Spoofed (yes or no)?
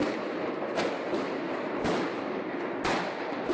no